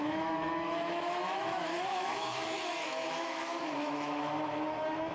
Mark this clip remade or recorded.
remade